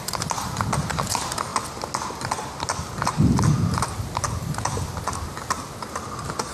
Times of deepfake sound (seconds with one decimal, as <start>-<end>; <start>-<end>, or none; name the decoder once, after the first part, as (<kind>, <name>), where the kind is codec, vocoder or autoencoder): none